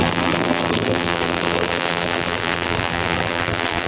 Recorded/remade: remade